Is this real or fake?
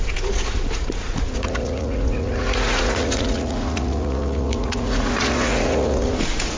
fake